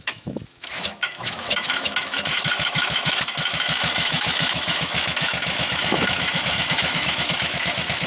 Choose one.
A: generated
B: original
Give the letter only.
A